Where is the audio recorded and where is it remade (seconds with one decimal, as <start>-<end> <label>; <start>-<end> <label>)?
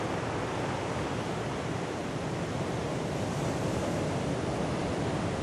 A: 0.0-2.0 recorded; 2.0-3.2 remade; 3.2-5.4 recorded